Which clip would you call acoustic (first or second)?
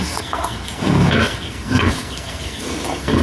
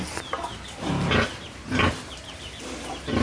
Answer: second